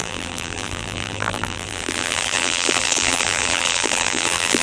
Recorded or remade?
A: remade